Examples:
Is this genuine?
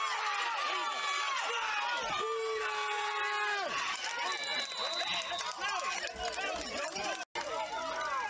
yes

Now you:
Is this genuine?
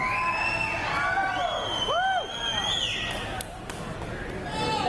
yes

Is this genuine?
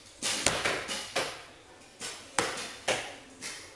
yes